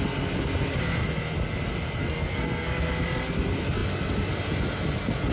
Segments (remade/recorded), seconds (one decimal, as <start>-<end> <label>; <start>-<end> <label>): 0.0-2.0 recorded; 2.0-2.9 remade; 2.9-5.3 recorded